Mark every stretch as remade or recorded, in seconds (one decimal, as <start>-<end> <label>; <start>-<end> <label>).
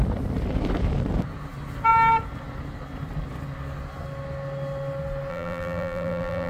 0.0-5.3 recorded; 5.3-6.5 remade